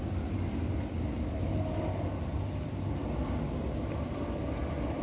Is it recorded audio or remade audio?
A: recorded